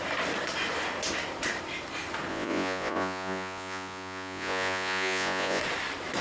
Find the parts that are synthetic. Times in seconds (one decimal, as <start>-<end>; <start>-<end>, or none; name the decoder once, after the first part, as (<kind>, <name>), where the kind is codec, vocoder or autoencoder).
2.3-5.6 (vocoder, Vocos)